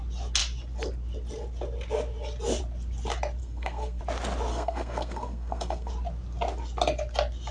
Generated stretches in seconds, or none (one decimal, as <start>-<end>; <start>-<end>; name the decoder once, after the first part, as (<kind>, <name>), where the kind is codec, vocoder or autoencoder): 3.4-4.0 (codec, SNAC); 4.5-5.9